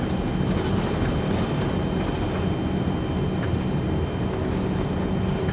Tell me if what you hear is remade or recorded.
recorded